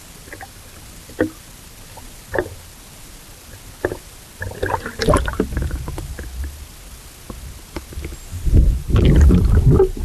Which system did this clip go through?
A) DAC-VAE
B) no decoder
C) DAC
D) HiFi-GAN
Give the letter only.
B